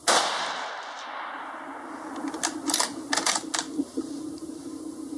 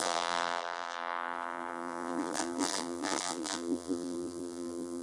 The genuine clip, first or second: first